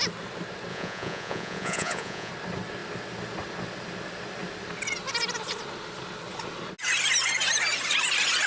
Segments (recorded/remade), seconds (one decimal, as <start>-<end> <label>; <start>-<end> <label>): 0.0-0.7 recorded; 0.7-2.3 remade; 2.3-8.5 recorded